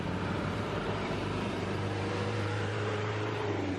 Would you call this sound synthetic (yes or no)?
yes